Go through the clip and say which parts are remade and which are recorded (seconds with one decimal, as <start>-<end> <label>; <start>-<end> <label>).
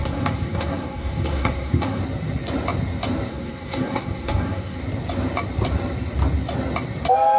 0.0-2.0 remade; 2.0-3.3 recorded; 3.3-4.8 remade; 4.8-7.4 recorded